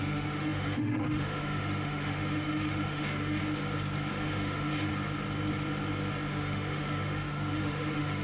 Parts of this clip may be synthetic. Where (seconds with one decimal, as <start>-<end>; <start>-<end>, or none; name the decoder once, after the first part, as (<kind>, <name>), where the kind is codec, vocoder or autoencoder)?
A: 0.0-3.4 (autoencoder, DAC-VAE); 4.1-4.9; 6.3-8.2